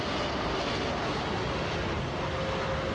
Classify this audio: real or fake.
real